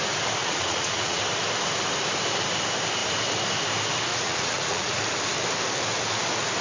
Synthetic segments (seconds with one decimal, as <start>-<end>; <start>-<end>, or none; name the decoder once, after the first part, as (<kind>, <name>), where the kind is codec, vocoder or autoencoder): 0.4-1.2 (vocoder, Vocos); 4.1-5.0

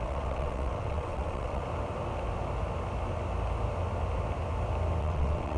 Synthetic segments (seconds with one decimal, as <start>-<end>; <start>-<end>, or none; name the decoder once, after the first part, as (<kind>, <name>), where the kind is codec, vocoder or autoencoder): 0.0-1.6 (vocoder, WaveNeXt); 5.0-5.6

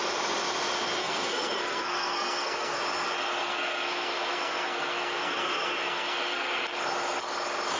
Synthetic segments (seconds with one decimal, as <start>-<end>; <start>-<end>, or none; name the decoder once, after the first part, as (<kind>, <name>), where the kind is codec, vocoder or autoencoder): 1.0-2.8 (codec, SNAC); 3.4-6.6

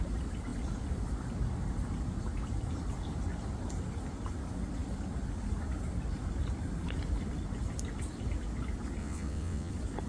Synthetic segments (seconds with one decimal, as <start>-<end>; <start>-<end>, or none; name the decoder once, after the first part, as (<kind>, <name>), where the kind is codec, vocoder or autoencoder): 9.0-9.7 (vocoder, WaveNeXt)

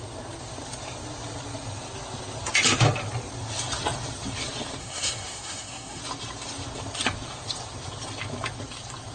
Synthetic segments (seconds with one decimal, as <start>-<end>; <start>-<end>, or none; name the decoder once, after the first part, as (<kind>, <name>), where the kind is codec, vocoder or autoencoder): 4.8-6.0 (codec, SNAC)

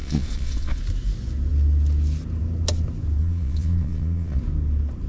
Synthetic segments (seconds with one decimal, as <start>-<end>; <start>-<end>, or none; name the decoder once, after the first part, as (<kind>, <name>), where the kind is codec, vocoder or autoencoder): 0.0-0.8 (vocoder, Vocos); 3.2-4.4